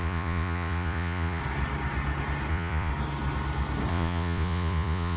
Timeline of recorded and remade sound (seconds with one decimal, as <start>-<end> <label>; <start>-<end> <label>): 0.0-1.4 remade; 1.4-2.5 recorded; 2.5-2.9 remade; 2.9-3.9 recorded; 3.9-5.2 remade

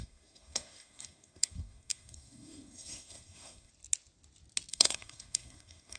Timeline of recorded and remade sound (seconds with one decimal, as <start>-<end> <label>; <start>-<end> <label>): 0.0-3.7 remade; 3.7-4.7 recorded; 4.7-6.0 remade

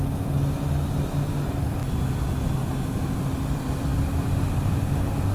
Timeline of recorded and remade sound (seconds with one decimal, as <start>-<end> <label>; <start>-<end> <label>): 0.0-1.8 remade; 1.8-3.2 recorded; 3.2-5.3 remade